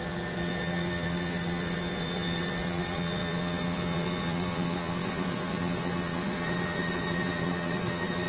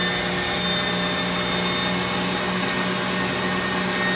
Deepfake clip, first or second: first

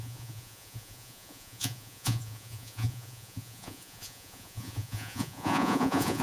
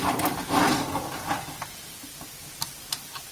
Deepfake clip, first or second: first